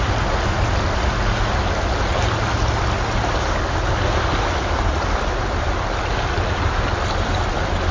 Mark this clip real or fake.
real